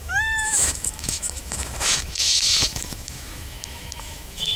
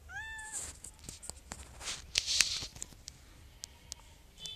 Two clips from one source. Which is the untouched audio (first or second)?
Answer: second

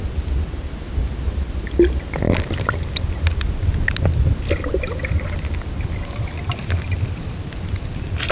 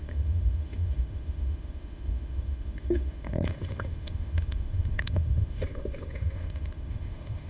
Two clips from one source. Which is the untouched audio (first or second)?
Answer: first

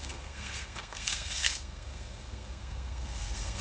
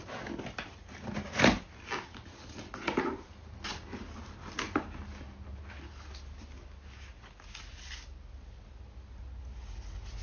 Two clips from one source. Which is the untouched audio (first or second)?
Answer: second